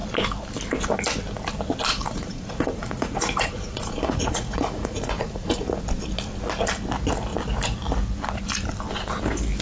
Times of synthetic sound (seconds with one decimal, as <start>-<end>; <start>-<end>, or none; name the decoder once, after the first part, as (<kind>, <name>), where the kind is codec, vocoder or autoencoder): 1.9-5.8 (vocoder, Vocos)